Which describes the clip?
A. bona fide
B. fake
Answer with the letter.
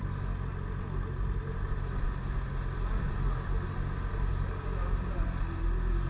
A